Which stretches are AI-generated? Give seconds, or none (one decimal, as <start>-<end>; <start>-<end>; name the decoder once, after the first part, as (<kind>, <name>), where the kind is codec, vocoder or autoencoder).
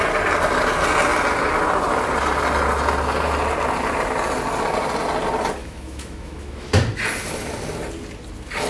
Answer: 5.6-6.7 (autoencoder, DAC-VAE)